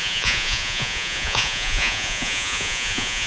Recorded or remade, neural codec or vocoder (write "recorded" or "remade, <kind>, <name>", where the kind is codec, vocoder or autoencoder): remade, vocoder, Vocos